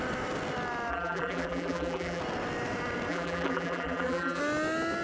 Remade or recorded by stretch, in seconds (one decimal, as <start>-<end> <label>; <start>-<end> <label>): 0.0-0.9 recorded; 0.9-2.2 remade; 2.2-3.1 recorded; 3.1-4.4 remade; 4.4-5.0 recorded